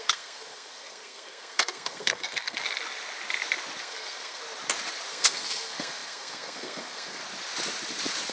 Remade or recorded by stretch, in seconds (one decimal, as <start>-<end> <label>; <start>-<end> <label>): 0.0-2.6 remade; 2.6-3.8 recorded; 3.8-4.4 remade; 4.4-5.1 recorded; 5.1-7.2 remade; 7.2-8.3 recorded